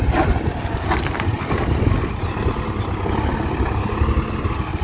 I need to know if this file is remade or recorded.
recorded